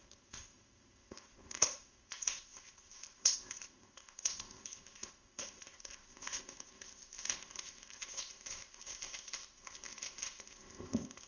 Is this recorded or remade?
remade